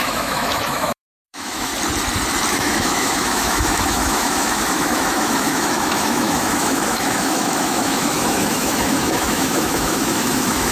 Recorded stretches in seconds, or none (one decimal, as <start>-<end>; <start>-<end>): 1.7-2.5